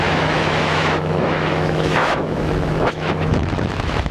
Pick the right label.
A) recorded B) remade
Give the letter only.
B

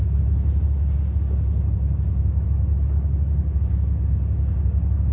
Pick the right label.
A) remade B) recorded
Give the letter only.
B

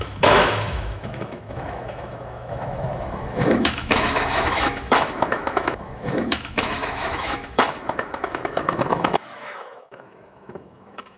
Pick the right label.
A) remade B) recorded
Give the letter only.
A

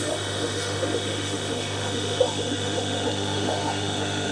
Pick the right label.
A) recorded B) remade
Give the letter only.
B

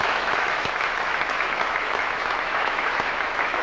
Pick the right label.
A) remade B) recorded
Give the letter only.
A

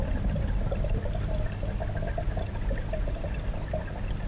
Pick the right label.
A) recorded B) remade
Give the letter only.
A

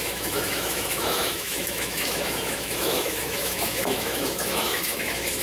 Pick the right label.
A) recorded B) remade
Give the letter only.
B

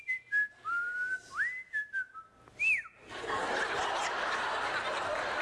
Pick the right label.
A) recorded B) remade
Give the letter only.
A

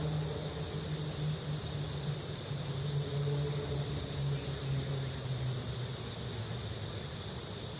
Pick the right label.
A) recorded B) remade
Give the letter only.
A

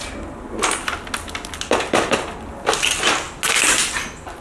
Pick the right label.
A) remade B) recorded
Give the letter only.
B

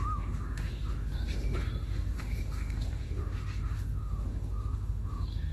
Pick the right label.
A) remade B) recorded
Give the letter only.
A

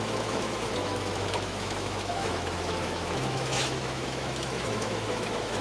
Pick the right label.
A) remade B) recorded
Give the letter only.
A